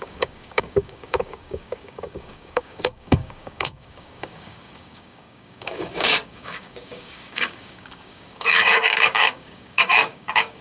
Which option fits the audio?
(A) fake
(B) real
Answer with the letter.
A